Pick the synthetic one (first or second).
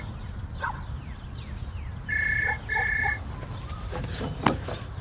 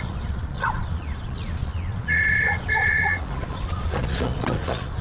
second